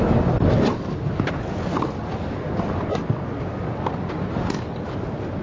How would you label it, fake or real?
real